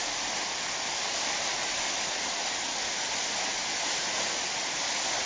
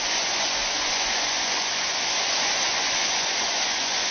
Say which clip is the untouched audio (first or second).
first